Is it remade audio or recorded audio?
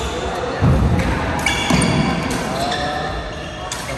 recorded